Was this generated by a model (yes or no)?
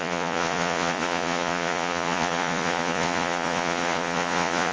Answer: yes